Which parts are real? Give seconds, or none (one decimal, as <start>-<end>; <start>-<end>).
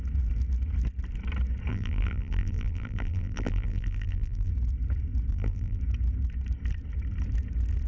0.0-1.7; 4.5-5.3; 5.8-7.9